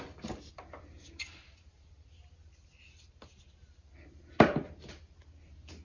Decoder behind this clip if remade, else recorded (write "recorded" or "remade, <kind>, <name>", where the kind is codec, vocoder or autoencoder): recorded